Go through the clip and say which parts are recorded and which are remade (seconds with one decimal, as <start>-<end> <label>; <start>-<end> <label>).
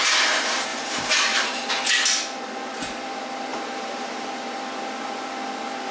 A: 0.0-0.7 recorded; 0.7-1.7 remade; 1.7-3.5 recorded; 3.5-4.3 remade; 4.3-5.9 recorded